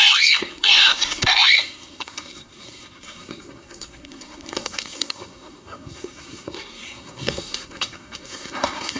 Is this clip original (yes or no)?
no